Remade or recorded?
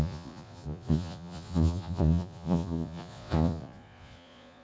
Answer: remade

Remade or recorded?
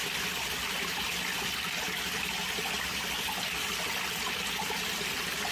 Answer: recorded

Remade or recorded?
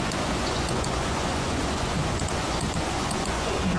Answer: remade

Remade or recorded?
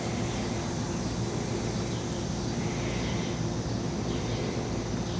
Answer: recorded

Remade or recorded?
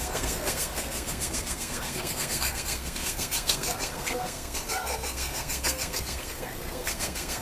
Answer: remade